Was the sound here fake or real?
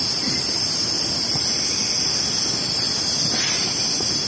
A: real